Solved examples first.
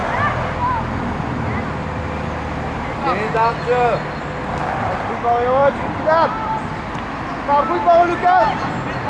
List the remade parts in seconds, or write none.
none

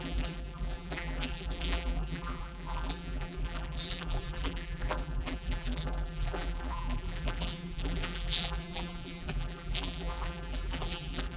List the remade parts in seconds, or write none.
0.0-11.4 (vocoder, BigVGAN v2)

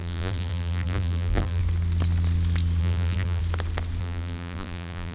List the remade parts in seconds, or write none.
0.0-1.6 (vocoder, BigVGAN v2); 2.8-3.4; 4.0-5.1

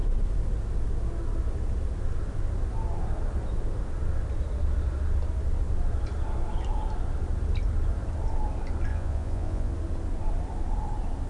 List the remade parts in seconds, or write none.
8.9-9.7 (vocoder, Vocos)